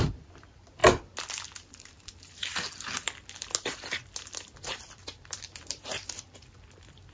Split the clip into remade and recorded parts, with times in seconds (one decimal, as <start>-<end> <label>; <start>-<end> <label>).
0.0-0.8 remade; 0.8-4.6 recorded; 4.6-7.1 remade